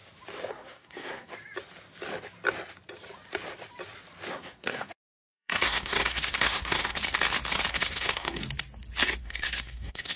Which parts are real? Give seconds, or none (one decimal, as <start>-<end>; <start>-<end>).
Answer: 0.0-0.5; 1.3-4.3; 7.0-7.7; 8.4-9.2